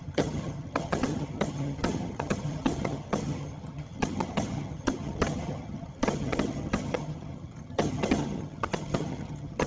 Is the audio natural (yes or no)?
no